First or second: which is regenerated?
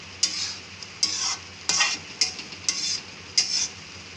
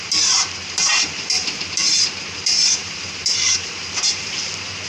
second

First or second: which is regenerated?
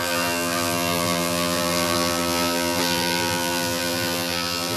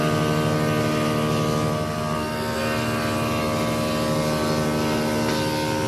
first